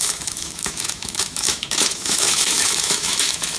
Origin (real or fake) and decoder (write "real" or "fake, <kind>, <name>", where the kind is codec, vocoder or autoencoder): fake, autoencoder, DAC-VAE